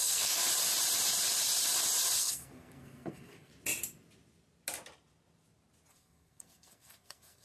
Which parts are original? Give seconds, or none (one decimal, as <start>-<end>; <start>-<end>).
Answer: 0.4-2.2; 3.5-5.9